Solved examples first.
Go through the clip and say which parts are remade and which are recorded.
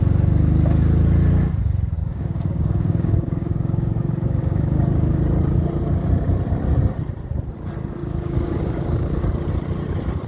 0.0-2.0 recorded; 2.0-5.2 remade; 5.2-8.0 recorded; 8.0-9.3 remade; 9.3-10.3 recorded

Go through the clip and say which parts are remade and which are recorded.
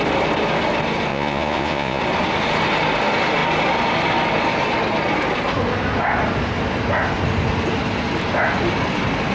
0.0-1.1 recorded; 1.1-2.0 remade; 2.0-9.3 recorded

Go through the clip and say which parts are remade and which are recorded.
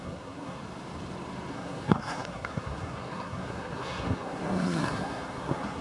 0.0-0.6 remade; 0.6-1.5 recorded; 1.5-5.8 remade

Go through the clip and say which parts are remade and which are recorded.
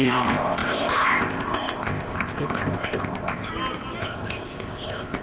0.0-3.5 remade; 3.5-4.0 recorded; 4.0-5.2 remade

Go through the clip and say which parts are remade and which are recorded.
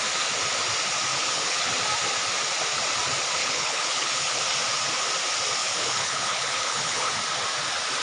0.0-1.1 recorded; 1.1-1.7 remade; 1.7-3.4 recorded; 3.4-4.4 remade; 4.4-5.6 recorded; 5.6-7.1 remade; 7.1-8.0 recorded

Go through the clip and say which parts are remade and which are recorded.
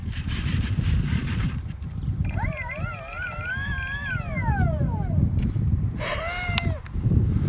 0.0-7.5 remade